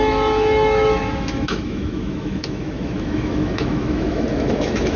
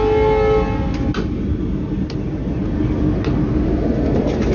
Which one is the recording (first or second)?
second